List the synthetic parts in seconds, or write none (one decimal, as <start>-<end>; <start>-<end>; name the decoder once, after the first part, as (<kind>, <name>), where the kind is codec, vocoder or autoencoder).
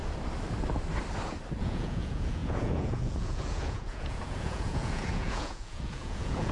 1.6-6.5 (vocoder, Vocos)